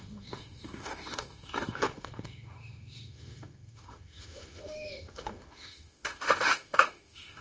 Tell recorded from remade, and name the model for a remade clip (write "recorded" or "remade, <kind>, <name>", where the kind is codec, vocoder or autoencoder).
remade, autoencoder, DAC-VAE